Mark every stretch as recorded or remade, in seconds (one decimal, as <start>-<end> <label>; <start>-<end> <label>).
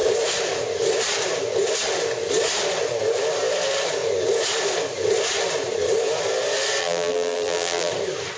0.0-6.8 recorded; 6.8-7.9 remade; 7.9-8.4 recorded